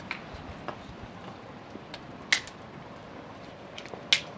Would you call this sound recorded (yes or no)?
yes